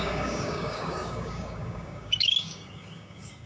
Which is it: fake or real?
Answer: fake